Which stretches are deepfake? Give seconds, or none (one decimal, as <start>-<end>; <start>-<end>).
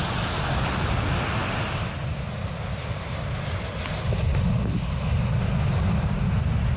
none